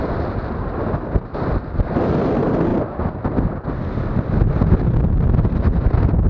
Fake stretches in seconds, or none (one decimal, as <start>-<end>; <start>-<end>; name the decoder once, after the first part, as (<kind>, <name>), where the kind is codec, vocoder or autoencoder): none